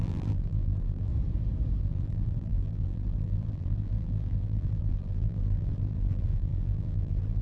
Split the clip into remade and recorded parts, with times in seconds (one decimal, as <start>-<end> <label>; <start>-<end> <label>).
0.0-1.1 remade; 1.1-1.8 recorded; 1.8-7.4 remade